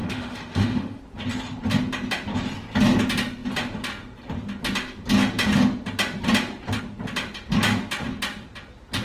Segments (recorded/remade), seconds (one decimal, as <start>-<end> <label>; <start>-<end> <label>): 0.0-1.0 remade; 1.0-9.0 recorded